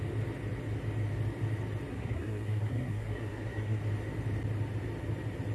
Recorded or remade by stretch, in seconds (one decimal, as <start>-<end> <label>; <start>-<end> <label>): 0.0-1.9 recorded; 1.9-3.8 remade; 3.8-5.5 recorded